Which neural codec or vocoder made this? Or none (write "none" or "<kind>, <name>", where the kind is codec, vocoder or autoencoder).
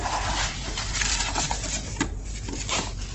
vocoder, BigVGAN v2